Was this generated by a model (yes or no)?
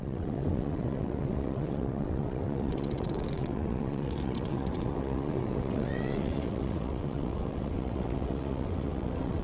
yes